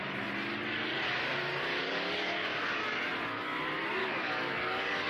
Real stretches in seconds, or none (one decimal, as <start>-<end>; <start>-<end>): 0.0-1.8; 3.1-4.0